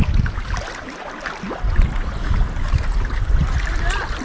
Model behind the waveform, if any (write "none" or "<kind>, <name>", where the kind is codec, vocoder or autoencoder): none